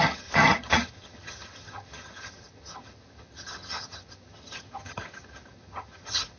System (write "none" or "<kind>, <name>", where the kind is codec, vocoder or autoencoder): vocoder, HiFi-GAN